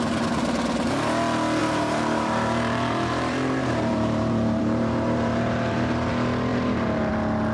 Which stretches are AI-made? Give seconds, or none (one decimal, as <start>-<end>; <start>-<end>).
1.6-6.1; 6.5-7.1